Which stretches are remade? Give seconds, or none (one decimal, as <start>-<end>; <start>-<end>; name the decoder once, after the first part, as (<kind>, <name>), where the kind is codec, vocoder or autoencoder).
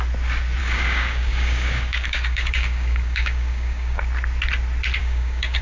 0.6-4.0 (codec, DAC); 5.0-5.6